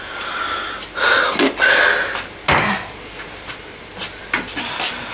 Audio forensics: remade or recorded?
recorded